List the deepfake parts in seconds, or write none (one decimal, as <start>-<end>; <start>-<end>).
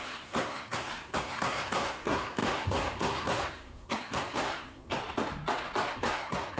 0.0-5.0; 5.9-6.6